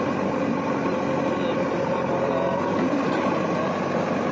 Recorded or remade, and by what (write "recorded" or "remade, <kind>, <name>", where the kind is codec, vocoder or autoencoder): recorded